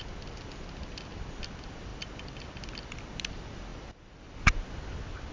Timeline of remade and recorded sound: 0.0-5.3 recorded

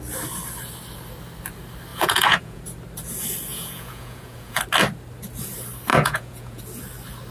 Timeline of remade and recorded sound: 0.0-1.9 recorded; 1.9-2.6 remade; 2.6-3.5 recorded; 3.5-4.6 remade; 4.6-5.9 recorded; 5.9-6.6 remade; 6.6-7.3 recorded

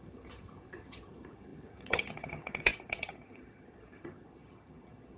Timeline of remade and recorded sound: 0.0-5.2 remade

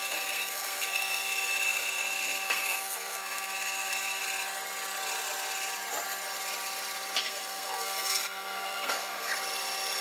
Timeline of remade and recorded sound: 0.0-4.2 remade; 4.2-7.2 recorded; 7.2-9.3 remade; 9.3-10.0 recorded

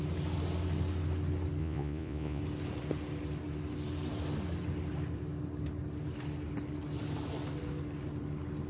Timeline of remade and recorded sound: 0.0-1.6 recorded; 1.6-2.4 remade; 2.4-8.7 recorded

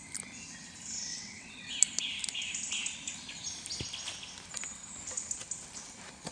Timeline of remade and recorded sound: 0.0-1.1 recorded; 1.1-1.7 remade; 1.7-6.3 recorded

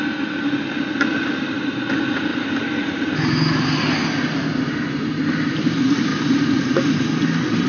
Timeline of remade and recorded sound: 0.0-7.7 recorded